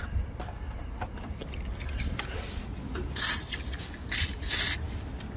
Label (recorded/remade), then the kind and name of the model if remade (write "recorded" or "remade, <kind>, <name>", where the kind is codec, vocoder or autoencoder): recorded